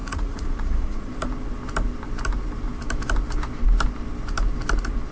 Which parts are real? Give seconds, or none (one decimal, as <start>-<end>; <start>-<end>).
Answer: 1.1-5.1